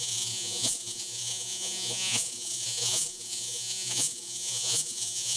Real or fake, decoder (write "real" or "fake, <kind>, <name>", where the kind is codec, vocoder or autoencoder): fake, vocoder, Vocos